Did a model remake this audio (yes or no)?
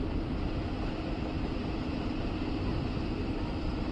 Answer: no